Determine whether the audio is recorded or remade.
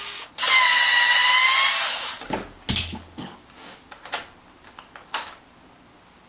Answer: recorded